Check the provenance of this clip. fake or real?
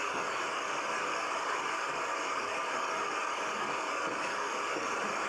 fake